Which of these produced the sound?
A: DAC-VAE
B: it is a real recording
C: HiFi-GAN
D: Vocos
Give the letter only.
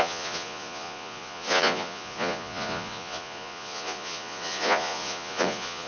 D